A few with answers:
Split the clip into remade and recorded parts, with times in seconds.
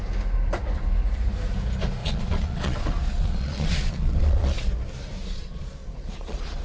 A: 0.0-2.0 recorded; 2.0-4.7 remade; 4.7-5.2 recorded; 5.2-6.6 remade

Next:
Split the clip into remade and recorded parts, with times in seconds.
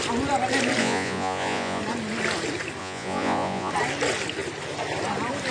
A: 0.0-0.8 recorded; 0.8-1.8 remade; 1.8-2.8 recorded; 2.8-3.7 remade; 3.7-5.5 recorded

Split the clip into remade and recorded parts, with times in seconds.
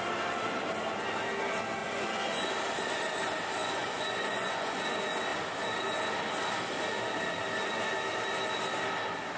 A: 0.0-1.8 recorded; 1.8-2.5 remade; 2.5-3.6 recorded; 3.6-4.8 remade; 4.8-9.4 recorded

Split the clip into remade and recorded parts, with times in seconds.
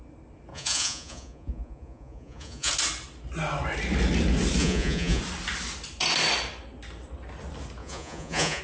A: 0.0-0.5 recorded; 0.5-2.7 remade; 2.7-4.6 recorded; 4.6-5.2 remade; 5.2-7.8 recorded; 7.8-8.6 remade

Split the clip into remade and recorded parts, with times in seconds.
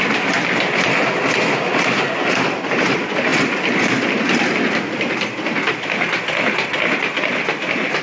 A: 0.0-8.0 recorded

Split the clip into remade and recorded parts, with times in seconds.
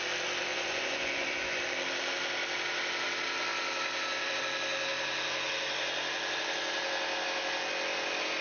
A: 0.0-0.5 recorded; 0.5-1.6 remade; 1.6-8.4 recorded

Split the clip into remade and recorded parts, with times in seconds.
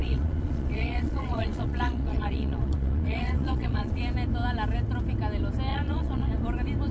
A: 0.0-4.0 remade; 4.0-5.7 recorded; 5.7-6.3 remade; 6.3-6.9 recorded